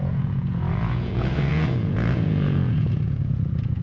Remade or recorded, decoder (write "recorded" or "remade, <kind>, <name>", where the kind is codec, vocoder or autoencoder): remade, vocoder, Vocos